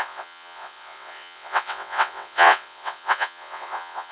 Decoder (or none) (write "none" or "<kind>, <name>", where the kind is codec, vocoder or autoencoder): vocoder, WaveNeXt